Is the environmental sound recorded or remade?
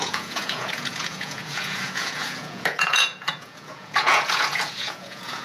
remade